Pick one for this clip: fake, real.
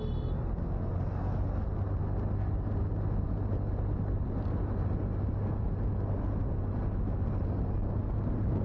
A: real